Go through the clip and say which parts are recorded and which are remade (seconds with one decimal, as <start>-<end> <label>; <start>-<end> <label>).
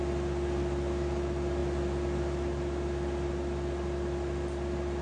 0.0-5.0 recorded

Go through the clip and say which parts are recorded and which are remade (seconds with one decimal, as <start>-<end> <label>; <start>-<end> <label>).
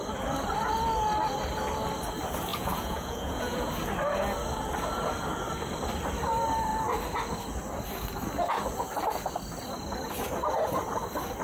0.0-2.5 recorded; 2.5-3.7 remade; 3.7-11.4 recorded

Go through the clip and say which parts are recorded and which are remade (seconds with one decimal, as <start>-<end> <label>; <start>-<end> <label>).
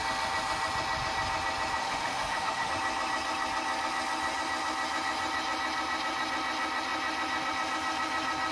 0.0-1.8 recorded; 1.8-2.7 remade; 2.7-8.5 recorded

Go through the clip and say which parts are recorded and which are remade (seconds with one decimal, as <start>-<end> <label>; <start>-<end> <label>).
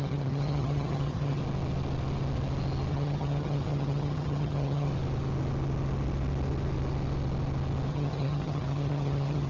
0.0-1.4 remade; 1.4-2.9 recorded; 2.9-4.9 remade; 4.9-7.9 recorded; 7.9-9.5 remade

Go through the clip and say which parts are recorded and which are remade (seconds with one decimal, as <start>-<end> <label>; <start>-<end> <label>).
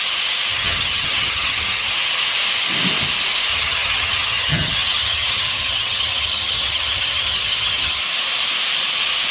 0.0-0.5 recorded; 0.5-1.9 remade; 1.9-3.5 recorded; 3.5-8.0 remade; 8.0-9.3 recorded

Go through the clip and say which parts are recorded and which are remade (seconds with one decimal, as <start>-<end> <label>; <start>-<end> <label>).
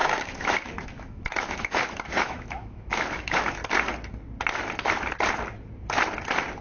0.0-3.6 remade; 3.6-6.6 recorded